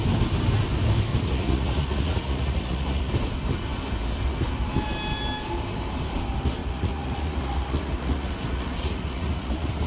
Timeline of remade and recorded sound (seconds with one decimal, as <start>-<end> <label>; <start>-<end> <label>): 0.0-1.1 recorded; 1.1-3.1 remade; 3.1-6.6 recorded; 6.6-9.9 remade